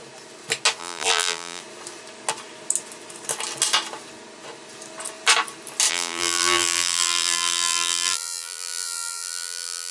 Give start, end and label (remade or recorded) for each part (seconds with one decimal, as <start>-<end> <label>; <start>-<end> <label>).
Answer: 0.0-0.8 recorded; 0.8-1.6 remade; 1.6-5.9 recorded; 5.9-9.9 remade